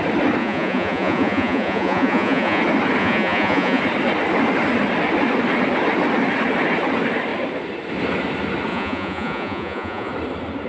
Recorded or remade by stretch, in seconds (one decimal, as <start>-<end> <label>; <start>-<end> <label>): 0.0-0.4 recorded; 0.4-2.6 remade; 2.6-3.0 recorded; 3.0-3.8 remade; 3.8-8.7 recorded; 8.7-10.1 remade; 10.1-10.7 recorded